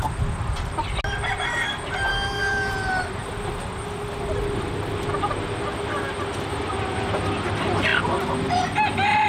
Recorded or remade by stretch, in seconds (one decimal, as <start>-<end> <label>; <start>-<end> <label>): 0.0-2.1 recorded; 2.1-2.7 remade; 2.7-9.3 recorded

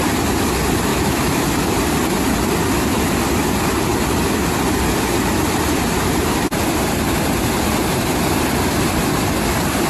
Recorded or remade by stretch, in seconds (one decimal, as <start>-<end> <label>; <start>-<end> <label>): 0.0-0.9 recorded; 0.9-1.4 remade; 1.4-9.9 recorded

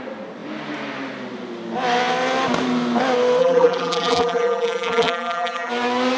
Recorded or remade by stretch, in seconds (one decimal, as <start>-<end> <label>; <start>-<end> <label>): 0.0-3.4 recorded; 3.4-5.7 remade; 5.7-6.2 recorded

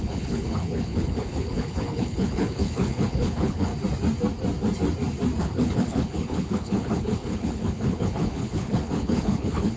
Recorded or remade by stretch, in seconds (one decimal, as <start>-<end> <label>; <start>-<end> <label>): 0.0-3.7 remade; 3.7-5.4 recorded; 5.4-9.8 remade

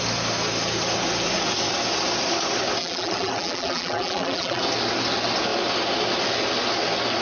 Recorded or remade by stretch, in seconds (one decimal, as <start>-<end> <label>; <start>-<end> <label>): 0.0-2.8 recorded; 2.8-4.6 remade; 4.6-7.2 recorded